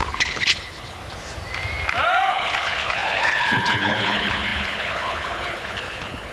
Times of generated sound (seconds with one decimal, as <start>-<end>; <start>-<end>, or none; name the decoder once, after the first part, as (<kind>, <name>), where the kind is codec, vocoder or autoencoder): 0.0-1.0 (codec, HILCodec); 2.3-6.3